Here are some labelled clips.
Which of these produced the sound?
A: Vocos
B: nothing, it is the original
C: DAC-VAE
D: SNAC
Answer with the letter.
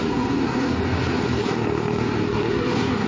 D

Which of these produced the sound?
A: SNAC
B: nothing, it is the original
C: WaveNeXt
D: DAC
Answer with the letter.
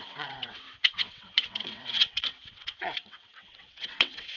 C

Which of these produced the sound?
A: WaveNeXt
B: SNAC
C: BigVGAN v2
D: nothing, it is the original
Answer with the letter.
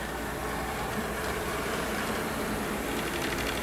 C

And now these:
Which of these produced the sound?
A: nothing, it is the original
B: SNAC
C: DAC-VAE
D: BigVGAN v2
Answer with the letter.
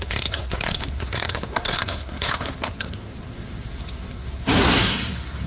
B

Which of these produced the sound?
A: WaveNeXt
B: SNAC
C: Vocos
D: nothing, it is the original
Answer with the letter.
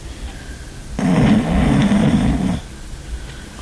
D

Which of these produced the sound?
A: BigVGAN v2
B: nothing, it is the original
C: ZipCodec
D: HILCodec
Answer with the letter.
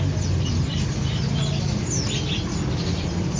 B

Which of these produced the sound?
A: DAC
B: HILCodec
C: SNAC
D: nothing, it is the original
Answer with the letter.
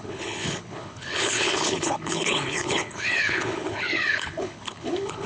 B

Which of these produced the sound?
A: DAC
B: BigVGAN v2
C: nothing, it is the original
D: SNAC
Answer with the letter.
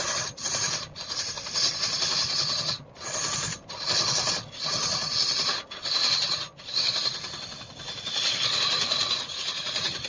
C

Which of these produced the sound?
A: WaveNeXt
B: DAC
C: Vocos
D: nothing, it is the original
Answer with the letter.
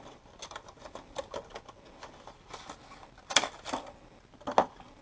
D